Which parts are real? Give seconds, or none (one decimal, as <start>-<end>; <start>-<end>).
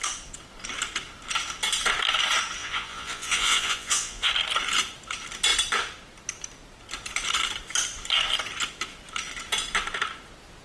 0.0-2.6; 4.3-10.6